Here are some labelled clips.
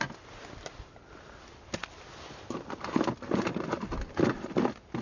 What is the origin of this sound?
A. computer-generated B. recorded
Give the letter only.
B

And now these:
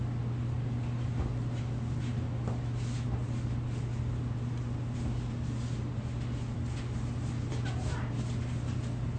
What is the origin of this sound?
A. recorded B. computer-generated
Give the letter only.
A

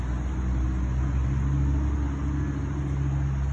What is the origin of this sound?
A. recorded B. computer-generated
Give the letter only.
A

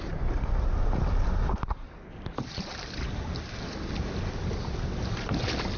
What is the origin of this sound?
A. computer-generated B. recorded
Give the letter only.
B